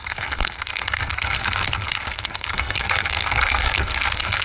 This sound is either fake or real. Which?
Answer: fake